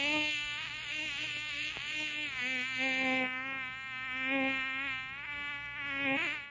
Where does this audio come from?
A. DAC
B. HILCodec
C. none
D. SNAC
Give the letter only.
A